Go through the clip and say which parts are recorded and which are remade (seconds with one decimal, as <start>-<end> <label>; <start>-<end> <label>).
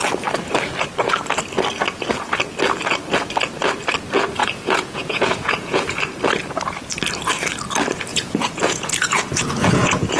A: 0.0-4.4 recorded; 4.4-6.0 remade; 6.0-8.1 recorded; 8.1-10.2 remade